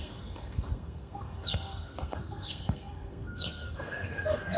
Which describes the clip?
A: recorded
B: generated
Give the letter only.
B